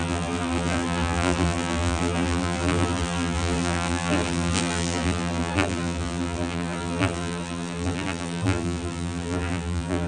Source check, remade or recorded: remade